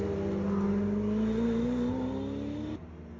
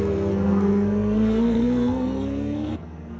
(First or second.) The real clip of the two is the first